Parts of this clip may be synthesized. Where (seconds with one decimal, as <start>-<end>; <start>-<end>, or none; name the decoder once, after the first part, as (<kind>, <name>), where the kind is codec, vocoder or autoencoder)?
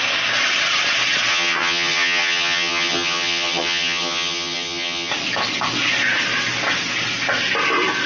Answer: 1.3-5.1 (vocoder, HiFi-GAN)